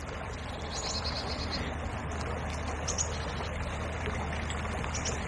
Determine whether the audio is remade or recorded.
recorded